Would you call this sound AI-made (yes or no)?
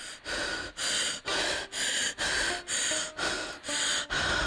no